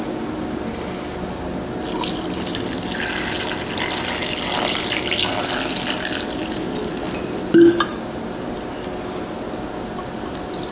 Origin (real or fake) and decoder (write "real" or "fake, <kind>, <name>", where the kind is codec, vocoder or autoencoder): real